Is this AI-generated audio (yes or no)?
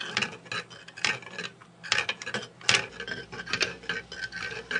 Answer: no